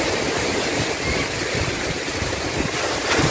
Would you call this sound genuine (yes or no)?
yes